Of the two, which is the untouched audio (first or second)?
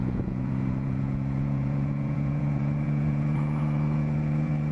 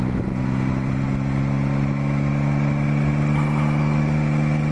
second